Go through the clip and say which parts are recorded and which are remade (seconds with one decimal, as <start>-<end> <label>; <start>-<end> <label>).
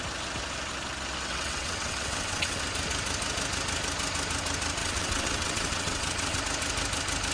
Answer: 0.0-1.3 recorded; 1.3-2.6 remade; 2.6-4.8 recorded; 4.8-6.4 remade; 6.4-7.3 recorded